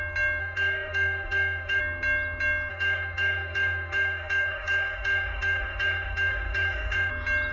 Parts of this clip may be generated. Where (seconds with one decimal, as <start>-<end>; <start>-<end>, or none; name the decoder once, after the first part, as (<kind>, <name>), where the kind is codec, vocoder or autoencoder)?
0.4-1.8 (autoencoder, DAC-VAE); 2.7-7.1